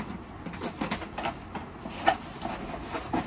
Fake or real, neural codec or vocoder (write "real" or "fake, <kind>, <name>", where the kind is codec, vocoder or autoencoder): real